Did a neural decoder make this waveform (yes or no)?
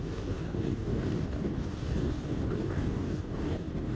yes